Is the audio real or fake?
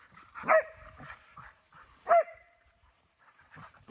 fake